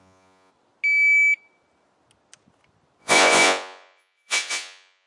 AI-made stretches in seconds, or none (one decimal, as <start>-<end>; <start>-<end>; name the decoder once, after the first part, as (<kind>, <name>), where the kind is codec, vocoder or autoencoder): 0.0-0.5 (vocoder, Vocos); 3.0-5.1